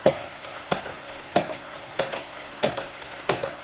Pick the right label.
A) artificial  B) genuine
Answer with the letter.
A